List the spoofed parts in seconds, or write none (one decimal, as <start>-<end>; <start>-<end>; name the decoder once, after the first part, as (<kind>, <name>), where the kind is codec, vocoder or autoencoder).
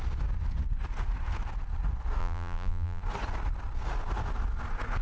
2.2-3.0 (vocoder, BigVGAN v2)